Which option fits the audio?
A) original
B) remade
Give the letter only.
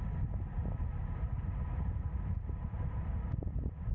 A